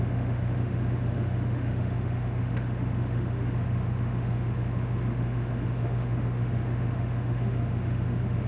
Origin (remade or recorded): remade